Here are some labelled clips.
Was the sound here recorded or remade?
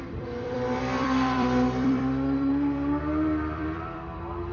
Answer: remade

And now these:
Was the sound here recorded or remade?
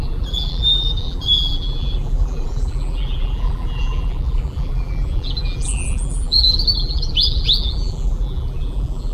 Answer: remade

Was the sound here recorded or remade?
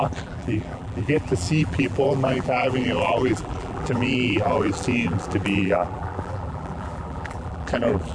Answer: remade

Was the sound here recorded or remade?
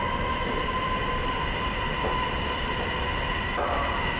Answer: remade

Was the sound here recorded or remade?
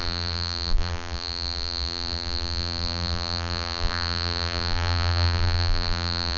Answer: remade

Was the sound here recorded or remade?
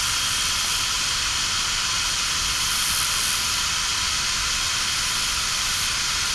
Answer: recorded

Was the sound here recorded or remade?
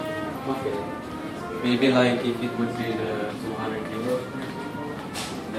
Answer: remade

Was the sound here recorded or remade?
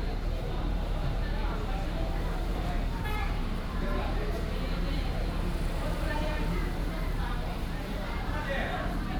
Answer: remade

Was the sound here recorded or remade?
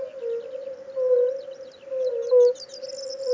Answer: recorded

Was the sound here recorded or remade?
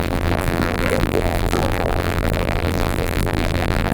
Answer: remade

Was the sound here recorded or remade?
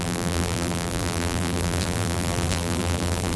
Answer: remade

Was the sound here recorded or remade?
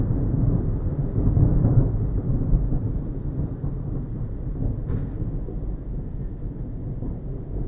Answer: recorded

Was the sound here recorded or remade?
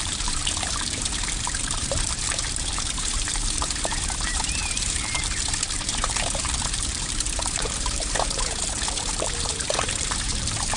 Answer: remade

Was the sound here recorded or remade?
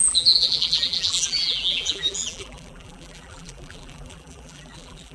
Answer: remade